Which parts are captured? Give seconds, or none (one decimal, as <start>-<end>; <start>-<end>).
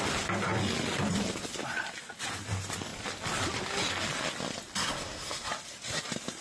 0.0-4.8; 5.5-6.4